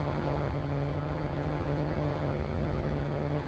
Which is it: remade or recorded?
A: remade